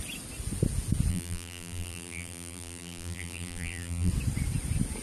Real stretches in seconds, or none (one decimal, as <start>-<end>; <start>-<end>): 0.0-1.1; 4.1-5.0